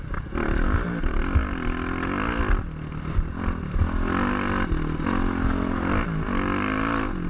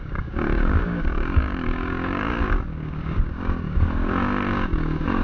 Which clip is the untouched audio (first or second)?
first